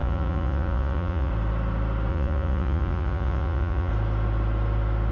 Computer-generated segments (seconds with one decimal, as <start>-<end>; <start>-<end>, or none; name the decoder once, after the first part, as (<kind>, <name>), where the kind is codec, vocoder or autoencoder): 0.0-1.3 (vocoder, Vocos); 2.1-3.9